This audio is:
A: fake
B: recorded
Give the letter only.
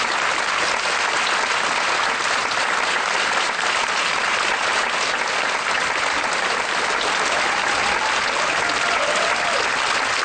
B